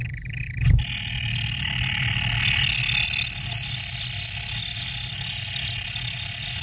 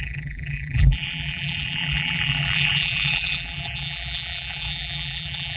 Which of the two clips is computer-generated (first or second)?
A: second